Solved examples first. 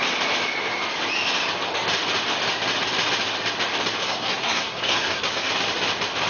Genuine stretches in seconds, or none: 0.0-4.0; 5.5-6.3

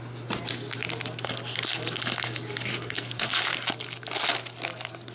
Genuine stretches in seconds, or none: 0.0-2.7; 3.4-5.1

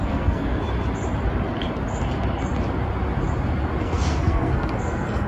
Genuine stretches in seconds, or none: 0.6-3.8

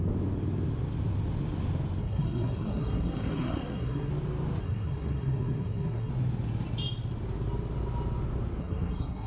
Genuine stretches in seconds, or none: 0.0-2.0; 4.1-4.6; 6.1-8.6

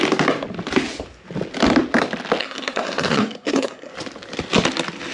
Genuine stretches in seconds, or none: 0.0-2.4; 3.9-5.1